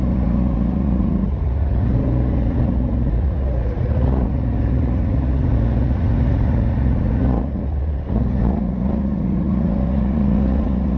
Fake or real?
fake